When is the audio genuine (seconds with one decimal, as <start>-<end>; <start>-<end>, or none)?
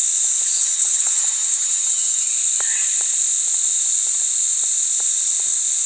0.0-0.6; 2.3-5.9